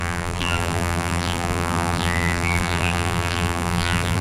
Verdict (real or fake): fake